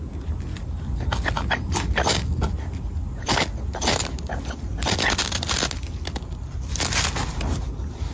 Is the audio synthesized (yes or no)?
no